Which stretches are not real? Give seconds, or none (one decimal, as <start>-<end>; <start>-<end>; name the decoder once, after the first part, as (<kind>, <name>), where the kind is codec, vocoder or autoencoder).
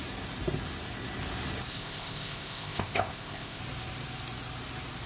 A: 1.7-3.6 (codec, ZipCodec)